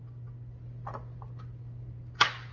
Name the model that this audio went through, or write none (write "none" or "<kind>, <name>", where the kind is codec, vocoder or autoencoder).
none